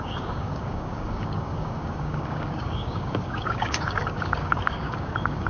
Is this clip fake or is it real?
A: fake